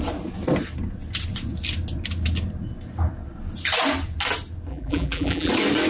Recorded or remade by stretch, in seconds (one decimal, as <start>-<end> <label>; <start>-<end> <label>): 0.0-4.7 recorded; 4.7-5.5 remade; 5.5-5.9 recorded